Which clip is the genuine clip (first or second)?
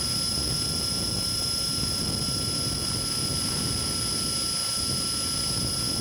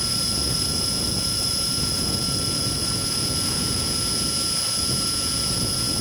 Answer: first